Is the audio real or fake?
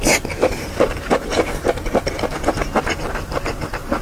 real